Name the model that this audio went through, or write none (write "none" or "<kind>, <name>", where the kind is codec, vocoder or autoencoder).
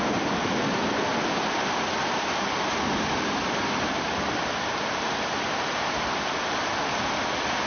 vocoder, BigVGAN v2